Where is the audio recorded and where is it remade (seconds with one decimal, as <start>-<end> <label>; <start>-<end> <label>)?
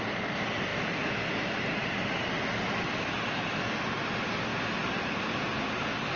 0.0-6.2 recorded